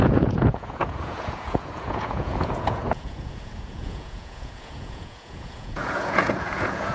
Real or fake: fake